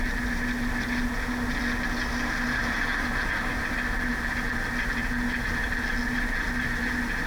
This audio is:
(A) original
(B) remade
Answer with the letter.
A